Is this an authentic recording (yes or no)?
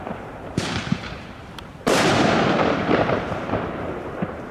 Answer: no